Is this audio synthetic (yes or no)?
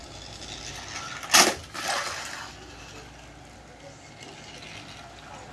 no